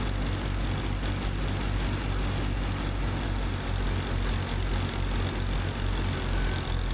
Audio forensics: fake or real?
real